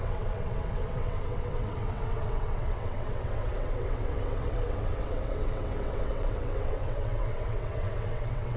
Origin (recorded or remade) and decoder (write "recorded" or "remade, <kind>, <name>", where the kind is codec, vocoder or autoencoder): remade, vocoder, WaveNeXt